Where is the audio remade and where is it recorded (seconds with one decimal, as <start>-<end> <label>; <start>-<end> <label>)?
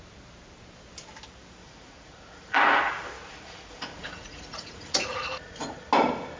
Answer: 0.0-1.6 recorded; 1.6-2.9 remade; 2.9-3.3 recorded; 3.3-5.9 remade; 5.9-6.4 recorded